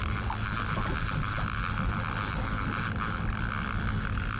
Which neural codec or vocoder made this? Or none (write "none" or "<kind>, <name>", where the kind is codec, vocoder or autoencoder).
none